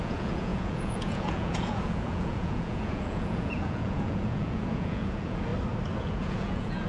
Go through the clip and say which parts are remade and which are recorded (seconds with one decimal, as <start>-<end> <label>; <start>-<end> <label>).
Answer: 0.0-5.5 remade; 5.5-6.0 recorded; 6.0-6.9 remade